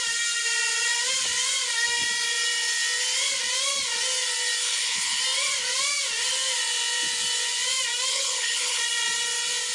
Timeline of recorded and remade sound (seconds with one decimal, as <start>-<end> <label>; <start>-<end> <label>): 0.0-4.6 recorded; 4.6-5.2 remade; 5.2-8.1 recorded; 8.1-8.8 remade; 8.8-9.7 recorded